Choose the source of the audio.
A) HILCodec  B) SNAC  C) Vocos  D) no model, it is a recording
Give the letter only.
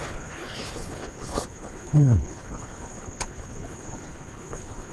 A